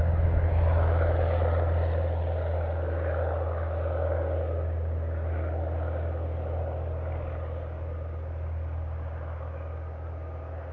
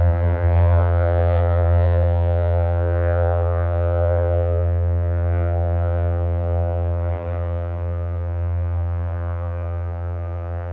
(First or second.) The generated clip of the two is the second